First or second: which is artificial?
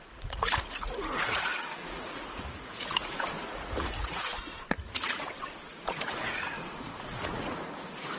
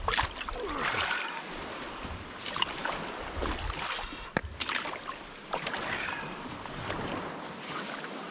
first